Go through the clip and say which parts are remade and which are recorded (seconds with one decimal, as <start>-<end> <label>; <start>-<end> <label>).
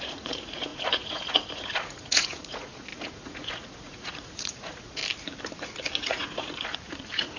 0.0-5.0 remade; 5.0-6.0 recorded; 6.0-7.4 remade